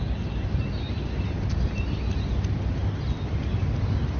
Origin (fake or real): real